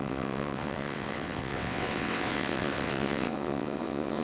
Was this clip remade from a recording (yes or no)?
yes